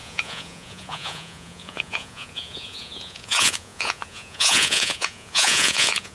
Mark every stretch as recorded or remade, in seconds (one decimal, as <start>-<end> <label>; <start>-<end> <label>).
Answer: 0.0-6.1 remade